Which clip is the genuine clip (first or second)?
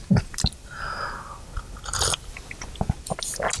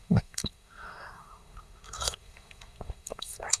first